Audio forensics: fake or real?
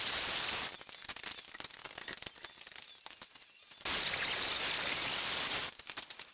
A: real